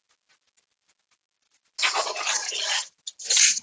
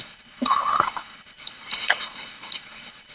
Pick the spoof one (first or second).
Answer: second